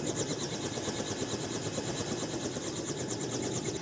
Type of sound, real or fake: real